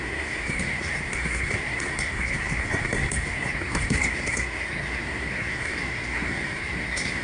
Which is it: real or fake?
fake